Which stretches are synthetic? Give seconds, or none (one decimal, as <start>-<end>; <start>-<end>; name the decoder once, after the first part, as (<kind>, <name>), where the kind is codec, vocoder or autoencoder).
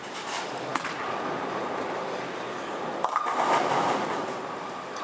none